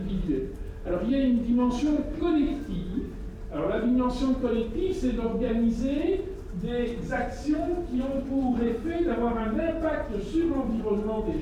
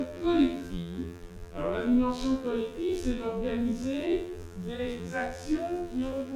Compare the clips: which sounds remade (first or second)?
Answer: second